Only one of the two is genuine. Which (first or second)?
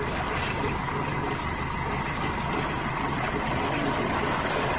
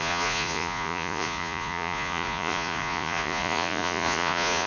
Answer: first